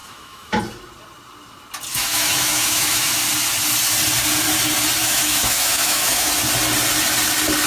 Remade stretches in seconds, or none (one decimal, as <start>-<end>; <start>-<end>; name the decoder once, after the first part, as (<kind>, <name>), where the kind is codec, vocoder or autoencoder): 0.0-0.6 (autoencoder, DAC-VAE); 1.9-3.1; 5.0-6.3